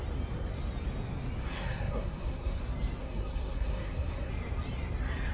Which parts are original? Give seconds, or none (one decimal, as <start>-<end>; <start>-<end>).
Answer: 0.0-1.4; 2.6-3.0; 4.3-5.3